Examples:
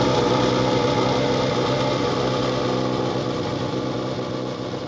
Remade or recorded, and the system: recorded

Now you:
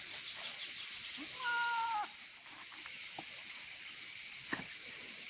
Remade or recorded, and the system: recorded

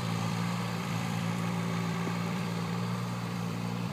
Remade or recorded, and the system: remade, vocoder, BigVGAN v2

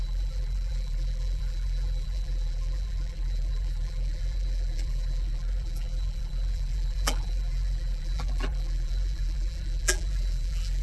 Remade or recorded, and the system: remade, vocoder, BigVGAN v2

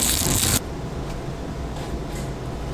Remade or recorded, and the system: recorded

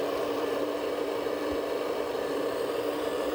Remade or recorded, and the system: remade, vocoder, BigVGAN v2